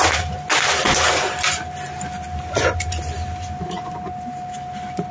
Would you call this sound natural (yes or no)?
yes